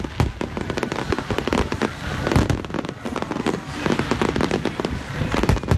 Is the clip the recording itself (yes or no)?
yes